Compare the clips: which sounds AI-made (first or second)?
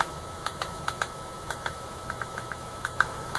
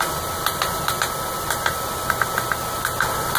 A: first